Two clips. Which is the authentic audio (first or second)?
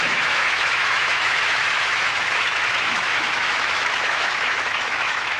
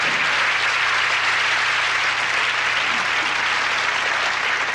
second